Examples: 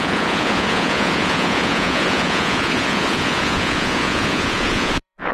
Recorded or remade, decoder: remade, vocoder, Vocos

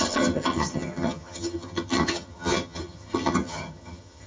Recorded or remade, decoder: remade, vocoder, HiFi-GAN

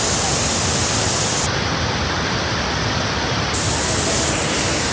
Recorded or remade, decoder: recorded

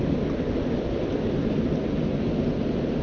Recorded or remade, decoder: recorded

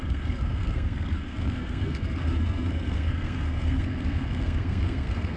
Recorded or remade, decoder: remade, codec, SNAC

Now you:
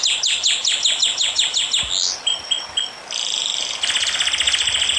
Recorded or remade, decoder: recorded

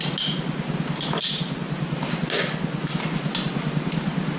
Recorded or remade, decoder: recorded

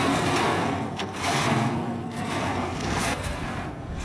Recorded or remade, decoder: remade, codec, SNAC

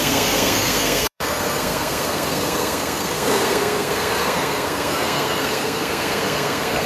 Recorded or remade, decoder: remade, codec, SNAC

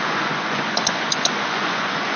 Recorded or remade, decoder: remade, vocoder, Vocos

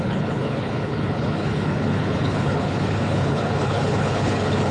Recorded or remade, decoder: remade, codec, HILCodec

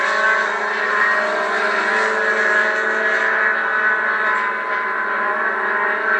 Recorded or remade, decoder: recorded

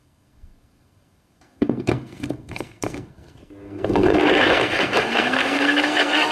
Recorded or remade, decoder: remade, codec, SNAC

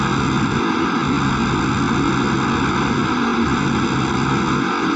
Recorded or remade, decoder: recorded